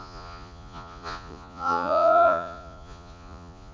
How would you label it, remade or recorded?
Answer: remade